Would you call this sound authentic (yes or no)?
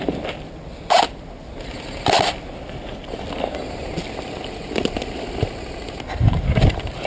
yes